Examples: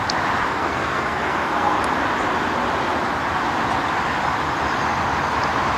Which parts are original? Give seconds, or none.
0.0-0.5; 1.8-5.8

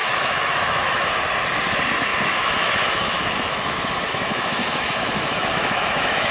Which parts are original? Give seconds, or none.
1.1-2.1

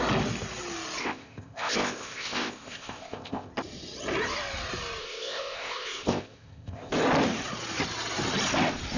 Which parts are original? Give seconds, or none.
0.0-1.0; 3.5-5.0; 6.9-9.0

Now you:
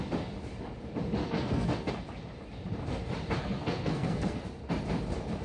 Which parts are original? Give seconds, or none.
0.0-1.2; 1.9-3.4; 4.4-5.4

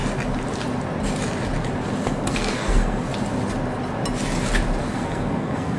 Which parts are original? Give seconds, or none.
0.0-2.0; 3.1-4.8

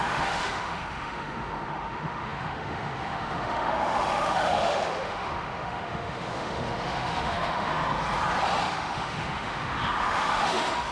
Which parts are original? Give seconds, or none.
7.7-8.6

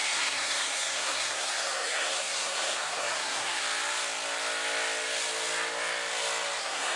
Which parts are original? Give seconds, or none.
3.5-6.6

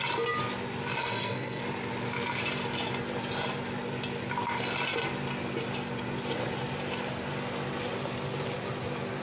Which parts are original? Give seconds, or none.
0.0-1.0; 1.6-9.2